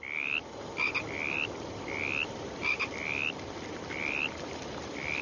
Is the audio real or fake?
fake